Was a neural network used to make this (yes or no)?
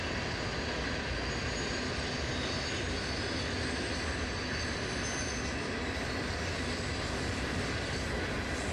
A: no